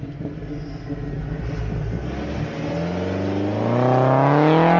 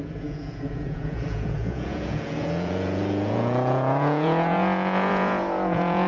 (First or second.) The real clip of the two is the first